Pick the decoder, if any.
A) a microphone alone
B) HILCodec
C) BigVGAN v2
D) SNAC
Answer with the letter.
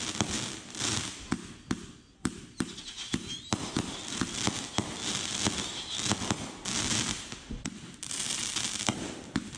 A